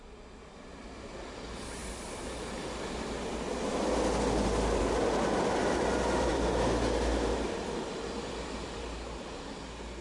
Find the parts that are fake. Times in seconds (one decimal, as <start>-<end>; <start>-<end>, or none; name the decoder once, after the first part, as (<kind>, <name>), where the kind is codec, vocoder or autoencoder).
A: none